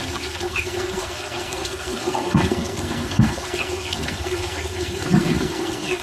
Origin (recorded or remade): remade